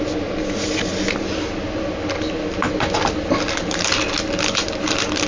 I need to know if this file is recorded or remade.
recorded